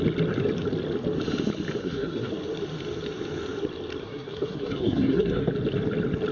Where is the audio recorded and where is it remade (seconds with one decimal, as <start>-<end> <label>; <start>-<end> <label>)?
0.0-1.8 recorded; 1.8-2.3 remade; 2.3-4.0 recorded; 4.0-5.5 remade; 5.5-6.3 recorded